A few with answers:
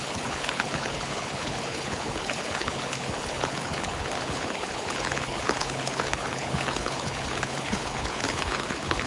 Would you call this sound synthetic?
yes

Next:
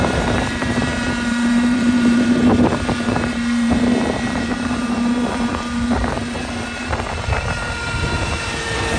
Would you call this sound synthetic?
yes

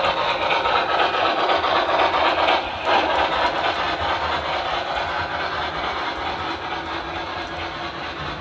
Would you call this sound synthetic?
no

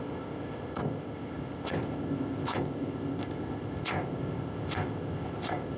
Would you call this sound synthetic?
yes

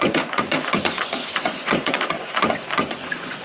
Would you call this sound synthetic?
yes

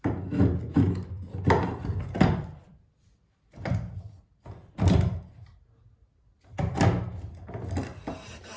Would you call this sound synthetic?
no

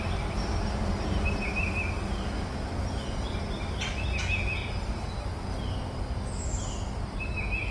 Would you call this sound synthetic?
no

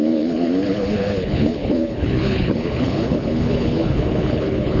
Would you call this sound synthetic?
yes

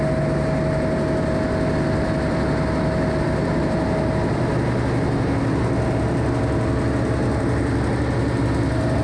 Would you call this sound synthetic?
no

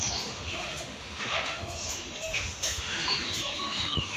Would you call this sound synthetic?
yes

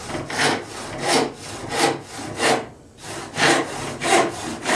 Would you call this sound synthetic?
no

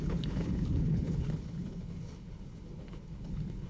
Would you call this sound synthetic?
yes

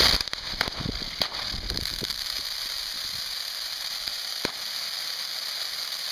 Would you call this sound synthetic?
no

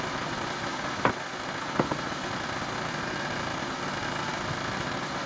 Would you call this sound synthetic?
no